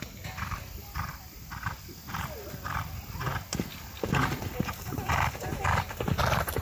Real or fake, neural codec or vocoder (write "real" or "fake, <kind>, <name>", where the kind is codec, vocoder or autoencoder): real